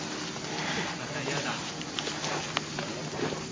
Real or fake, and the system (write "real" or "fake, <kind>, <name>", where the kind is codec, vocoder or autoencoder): real